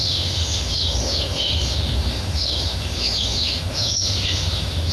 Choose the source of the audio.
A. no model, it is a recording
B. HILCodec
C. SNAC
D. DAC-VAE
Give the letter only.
D